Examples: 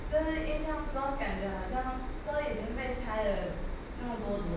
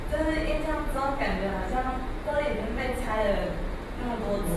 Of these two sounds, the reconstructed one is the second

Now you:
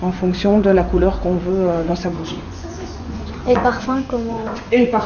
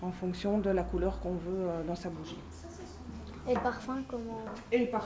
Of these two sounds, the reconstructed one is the first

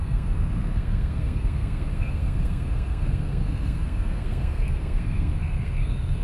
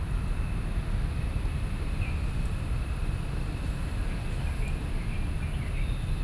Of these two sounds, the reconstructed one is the first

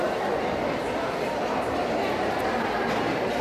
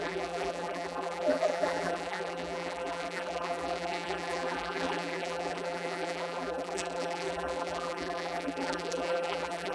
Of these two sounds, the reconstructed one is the second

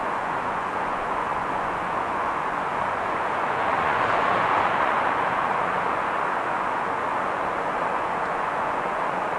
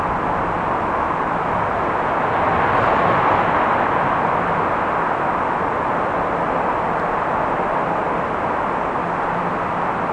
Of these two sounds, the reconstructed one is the first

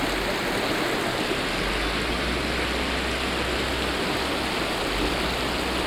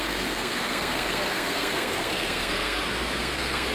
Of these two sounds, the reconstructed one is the second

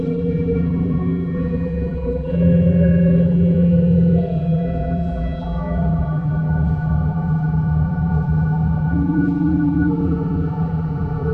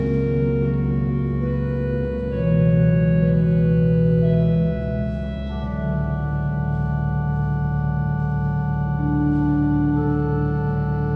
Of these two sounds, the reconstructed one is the first